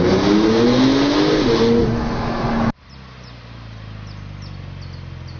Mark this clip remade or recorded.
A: recorded